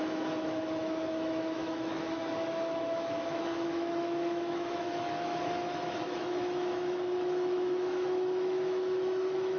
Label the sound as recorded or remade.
remade